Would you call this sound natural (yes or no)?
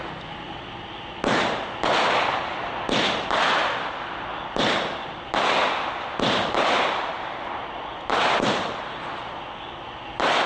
yes